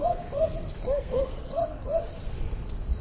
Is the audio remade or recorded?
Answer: remade